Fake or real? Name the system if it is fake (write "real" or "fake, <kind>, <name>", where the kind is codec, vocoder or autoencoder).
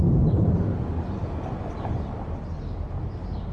real